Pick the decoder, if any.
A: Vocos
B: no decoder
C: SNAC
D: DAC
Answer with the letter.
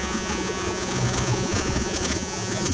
A